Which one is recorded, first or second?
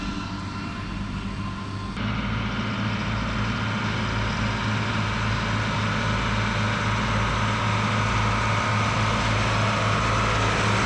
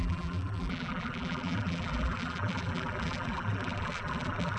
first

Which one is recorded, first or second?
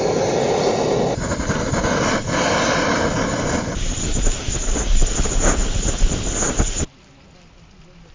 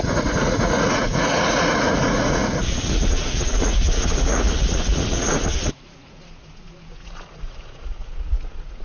first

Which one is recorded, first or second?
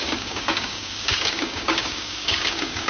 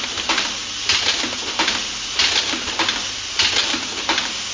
second